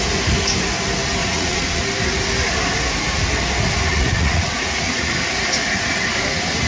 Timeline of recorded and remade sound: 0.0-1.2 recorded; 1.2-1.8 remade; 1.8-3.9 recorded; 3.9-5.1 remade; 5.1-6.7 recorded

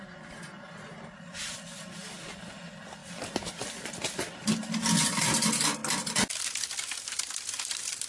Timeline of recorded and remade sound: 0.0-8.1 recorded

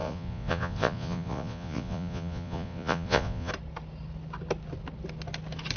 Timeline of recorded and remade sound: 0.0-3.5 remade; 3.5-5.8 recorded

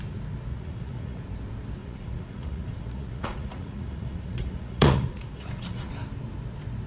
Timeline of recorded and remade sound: 0.0-0.5 recorded; 0.5-1.2 remade; 1.2-1.8 recorded; 1.8-5.9 remade; 5.9-6.9 recorded

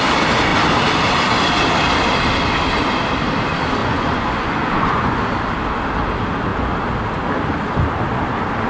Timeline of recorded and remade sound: 0.0-3.8 recorded; 3.8-5.2 remade; 5.2-8.7 recorded

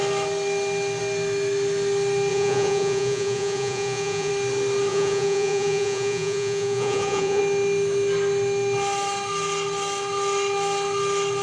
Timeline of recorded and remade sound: 0.0-2.3 recorded; 2.3-4.3 remade; 4.3-4.9 recorded; 4.9-7.4 remade; 7.4-11.4 recorded

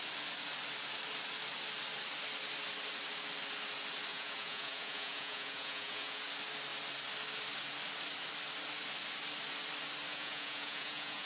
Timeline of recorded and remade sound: 0.0-4.1 recorded; 4.1-6.2 remade; 6.2-10.1 recorded; 10.1-11.3 remade

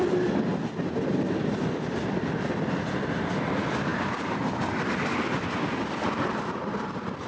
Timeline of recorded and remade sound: 0.0-7.3 recorded